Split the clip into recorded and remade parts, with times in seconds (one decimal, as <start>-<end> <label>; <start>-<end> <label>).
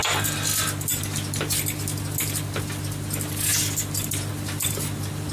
0.0-5.3 recorded